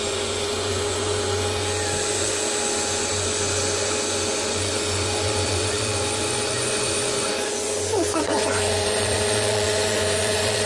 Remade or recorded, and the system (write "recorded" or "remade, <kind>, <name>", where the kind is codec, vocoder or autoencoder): remade, vocoder, Vocos